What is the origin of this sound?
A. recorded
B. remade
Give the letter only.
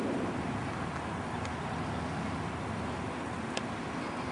A